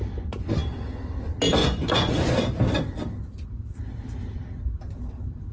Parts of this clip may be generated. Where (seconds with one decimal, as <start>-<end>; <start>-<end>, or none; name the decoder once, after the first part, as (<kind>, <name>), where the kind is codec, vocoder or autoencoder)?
1.6-2.3 (vocoder, Vocos)